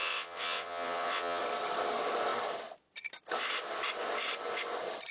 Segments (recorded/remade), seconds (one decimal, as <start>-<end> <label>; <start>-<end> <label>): 0.0-1.4 remade; 1.4-5.1 recorded